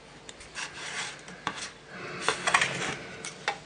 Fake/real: real